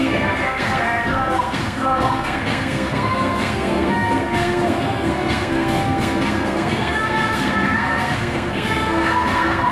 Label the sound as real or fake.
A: fake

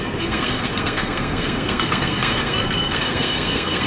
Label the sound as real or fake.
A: fake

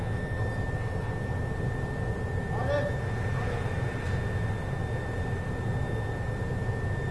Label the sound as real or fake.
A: real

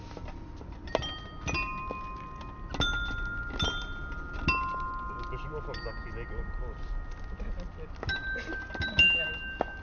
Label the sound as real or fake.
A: real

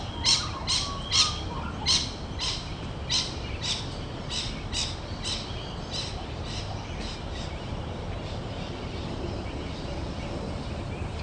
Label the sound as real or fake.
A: real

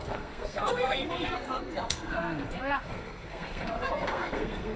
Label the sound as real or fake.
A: fake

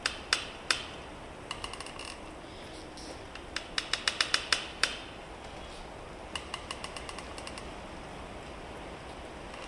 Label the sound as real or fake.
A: real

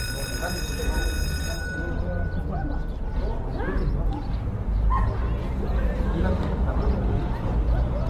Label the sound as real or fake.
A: real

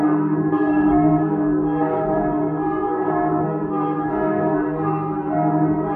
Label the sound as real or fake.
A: fake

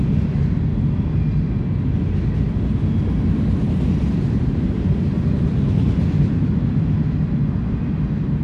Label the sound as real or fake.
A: real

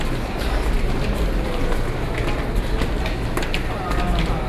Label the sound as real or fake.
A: real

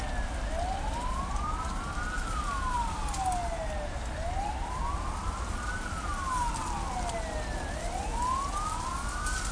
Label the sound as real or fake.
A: real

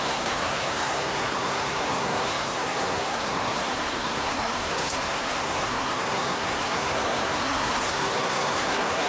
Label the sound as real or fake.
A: fake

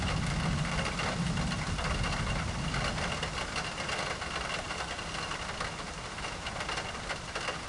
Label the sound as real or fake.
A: real